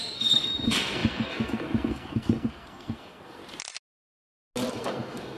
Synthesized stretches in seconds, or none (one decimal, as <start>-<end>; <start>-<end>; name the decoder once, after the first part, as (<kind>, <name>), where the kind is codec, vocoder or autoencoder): 0.0-3.4 (codec, SNAC); 4.7-5.4

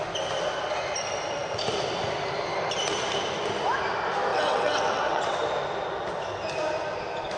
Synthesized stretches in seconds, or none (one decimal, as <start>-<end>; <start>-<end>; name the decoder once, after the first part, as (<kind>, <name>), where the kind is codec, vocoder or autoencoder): 4.3-5.4 (vocoder, WaveNeXt)

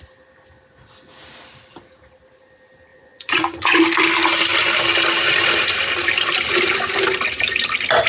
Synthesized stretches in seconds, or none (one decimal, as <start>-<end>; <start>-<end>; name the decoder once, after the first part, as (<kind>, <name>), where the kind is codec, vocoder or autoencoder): 2.9-3.8 (vocoder, Vocos)

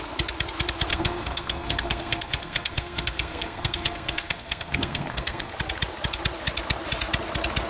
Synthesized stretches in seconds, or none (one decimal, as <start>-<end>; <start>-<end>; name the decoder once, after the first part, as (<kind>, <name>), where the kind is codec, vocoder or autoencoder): 0.9-5.5 (codec, SNAC)

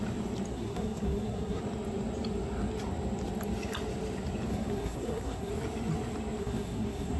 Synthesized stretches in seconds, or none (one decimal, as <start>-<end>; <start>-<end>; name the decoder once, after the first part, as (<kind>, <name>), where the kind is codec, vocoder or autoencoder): 0.5-1.6 (codec, SNAC); 4.5-5.5; 6.4-7.2

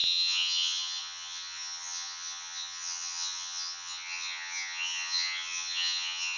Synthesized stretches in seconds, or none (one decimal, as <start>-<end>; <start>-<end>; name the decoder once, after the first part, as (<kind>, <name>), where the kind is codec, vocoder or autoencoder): 0.0-6.4 (vocoder, HiFi-GAN)